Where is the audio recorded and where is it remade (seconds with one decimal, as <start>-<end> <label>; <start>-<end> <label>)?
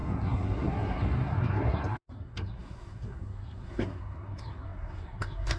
0.0-5.6 remade